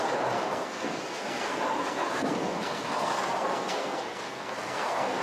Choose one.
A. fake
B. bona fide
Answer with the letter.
A